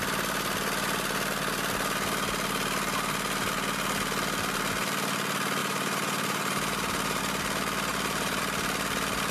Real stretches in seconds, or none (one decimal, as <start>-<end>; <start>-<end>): 0.0-5.6; 7.2-7.9; 8.4-9.3